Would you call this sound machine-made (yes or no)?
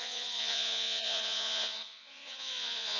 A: yes